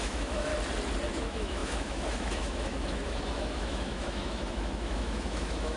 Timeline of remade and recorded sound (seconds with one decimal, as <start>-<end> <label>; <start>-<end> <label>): 0.0-0.5 remade; 0.5-1.1 recorded; 1.1-5.8 remade